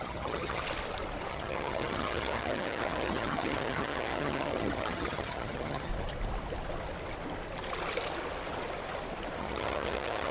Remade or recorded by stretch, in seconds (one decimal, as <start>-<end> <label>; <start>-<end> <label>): 0.0-0.6 remade; 0.6-1.3 recorded; 1.3-5.9 remade; 5.9-9.4 recorded; 9.4-10.3 remade